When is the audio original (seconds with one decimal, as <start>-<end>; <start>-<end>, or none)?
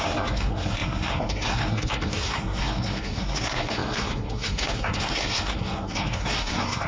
none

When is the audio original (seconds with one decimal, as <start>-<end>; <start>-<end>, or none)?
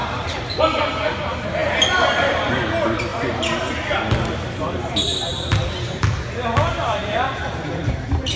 0.6-6.7